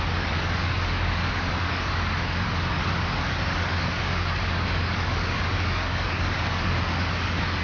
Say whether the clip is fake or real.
fake